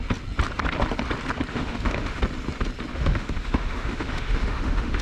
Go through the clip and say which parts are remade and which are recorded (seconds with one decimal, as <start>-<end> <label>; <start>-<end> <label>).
0.0-1.5 recorded; 1.5-2.2 remade; 2.2-2.9 recorded; 2.9-5.0 remade